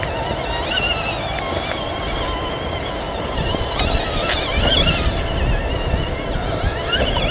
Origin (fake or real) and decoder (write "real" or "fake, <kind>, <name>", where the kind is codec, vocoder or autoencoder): real